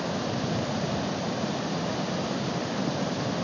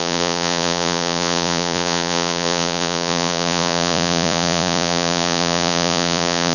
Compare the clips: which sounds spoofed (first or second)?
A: second